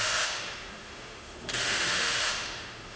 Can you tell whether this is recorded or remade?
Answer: remade